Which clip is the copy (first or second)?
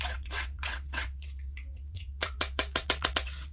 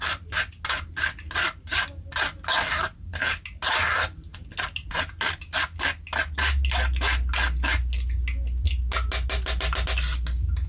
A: first